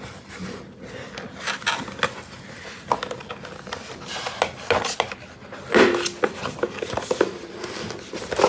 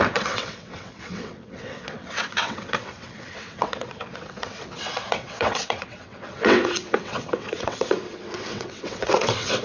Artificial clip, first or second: second